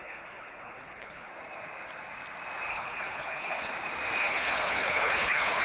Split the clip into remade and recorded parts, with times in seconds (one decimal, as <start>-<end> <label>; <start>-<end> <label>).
0.0-1.3 remade; 1.3-2.7 recorded; 2.7-3.7 remade; 3.7-4.2 recorded; 4.2-5.6 remade